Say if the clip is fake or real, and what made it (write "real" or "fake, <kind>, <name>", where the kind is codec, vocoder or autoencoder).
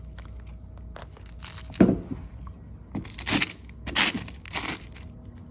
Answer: real